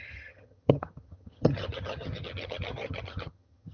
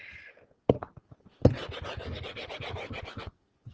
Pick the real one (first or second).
second